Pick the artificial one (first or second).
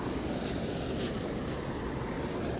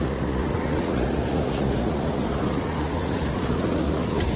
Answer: second